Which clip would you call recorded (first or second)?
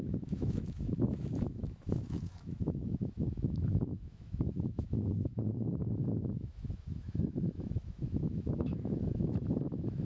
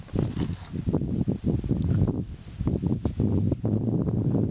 second